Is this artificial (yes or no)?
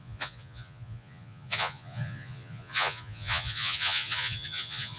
yes